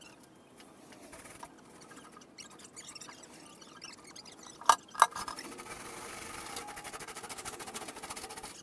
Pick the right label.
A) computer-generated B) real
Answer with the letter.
B